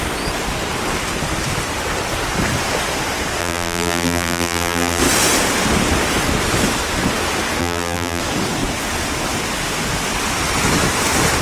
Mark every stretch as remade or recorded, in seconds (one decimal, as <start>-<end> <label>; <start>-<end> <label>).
0.0-3.4 recorded; 3.4-5.0 remade; 5.0-7.6 recorded; 7.6-8.2 remade; 8.2-11.4 recorded